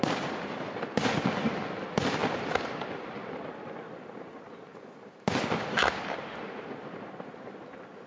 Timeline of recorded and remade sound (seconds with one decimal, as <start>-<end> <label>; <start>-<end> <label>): 0.0-8.1 recorded